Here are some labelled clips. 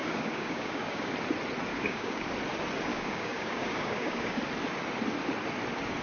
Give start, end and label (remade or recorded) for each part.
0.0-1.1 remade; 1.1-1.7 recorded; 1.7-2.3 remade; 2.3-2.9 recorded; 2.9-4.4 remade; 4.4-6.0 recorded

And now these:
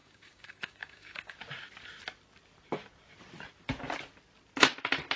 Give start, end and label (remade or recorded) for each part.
0.0-1.4 remade; 1.4-5.2 recorded